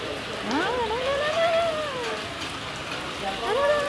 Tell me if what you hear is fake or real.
real